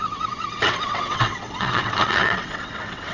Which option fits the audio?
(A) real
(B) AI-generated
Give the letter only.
B